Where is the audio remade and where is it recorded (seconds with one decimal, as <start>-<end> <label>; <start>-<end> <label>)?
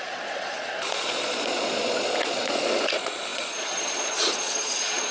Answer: 0.0-5.1 remade